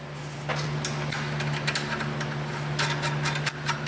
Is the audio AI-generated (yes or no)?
no